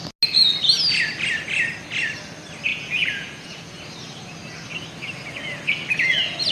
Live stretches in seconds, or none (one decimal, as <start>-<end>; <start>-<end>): 0.0-2.7; 3.8-6.5